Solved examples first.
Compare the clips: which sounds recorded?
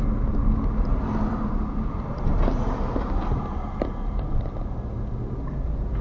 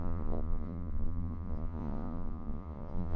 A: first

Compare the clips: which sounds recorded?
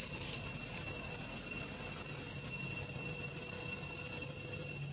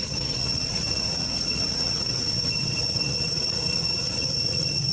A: first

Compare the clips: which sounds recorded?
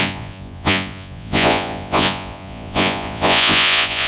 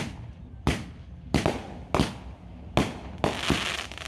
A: second